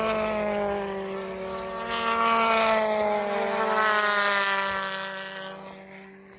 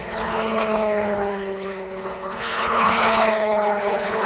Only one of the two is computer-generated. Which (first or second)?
second